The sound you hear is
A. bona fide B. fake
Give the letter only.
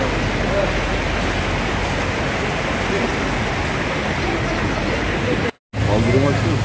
A